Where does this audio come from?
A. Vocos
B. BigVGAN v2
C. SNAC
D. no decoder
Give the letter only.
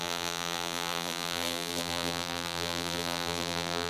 B